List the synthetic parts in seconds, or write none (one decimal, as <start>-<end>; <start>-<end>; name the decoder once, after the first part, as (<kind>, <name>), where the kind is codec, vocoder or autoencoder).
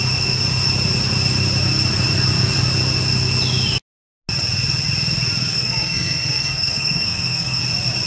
5.5-7.6 (codec, SNAC)